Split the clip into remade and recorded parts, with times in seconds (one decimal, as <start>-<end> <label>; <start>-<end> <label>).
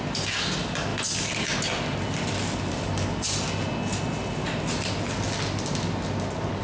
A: 0.0-6.6 recorded